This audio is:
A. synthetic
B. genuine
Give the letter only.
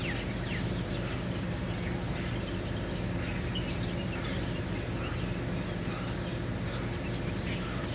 B